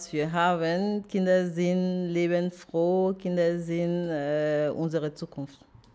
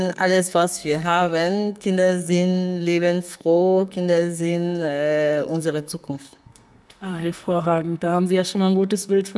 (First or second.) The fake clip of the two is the second